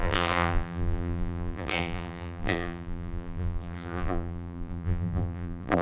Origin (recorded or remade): remade